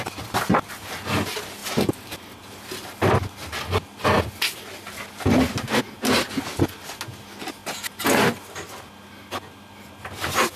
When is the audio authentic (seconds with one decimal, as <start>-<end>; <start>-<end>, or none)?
0.0-10.6